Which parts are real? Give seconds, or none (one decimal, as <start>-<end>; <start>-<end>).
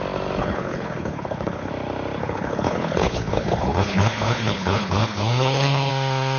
0.0-0.4; 1.7-2.2; 5.9-6.4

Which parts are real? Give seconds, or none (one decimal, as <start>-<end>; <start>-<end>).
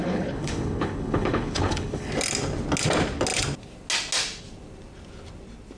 2.1-5.8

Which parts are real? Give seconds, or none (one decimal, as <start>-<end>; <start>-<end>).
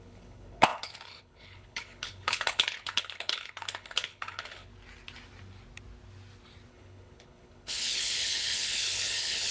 4.7-6.7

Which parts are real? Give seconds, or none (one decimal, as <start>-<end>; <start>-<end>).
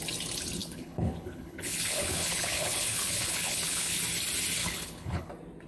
0.0-0.6; 4.0-4.6; 5.3-5.7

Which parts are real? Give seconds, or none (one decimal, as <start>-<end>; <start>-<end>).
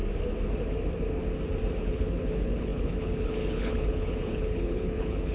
0.0-1.8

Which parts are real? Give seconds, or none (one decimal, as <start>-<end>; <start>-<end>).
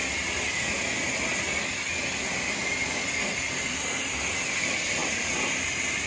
0.0-6.1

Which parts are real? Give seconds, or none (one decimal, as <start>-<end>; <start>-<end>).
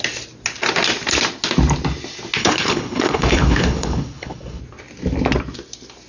0.0-2.4; 4.6-6.1